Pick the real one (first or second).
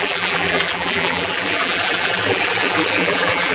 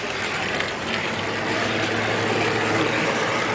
second